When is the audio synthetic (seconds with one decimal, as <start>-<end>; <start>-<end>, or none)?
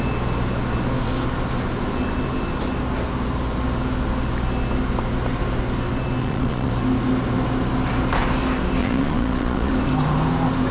6.2-6.7; 8.8-9.7